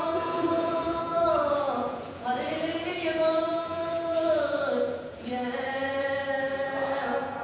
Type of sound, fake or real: fake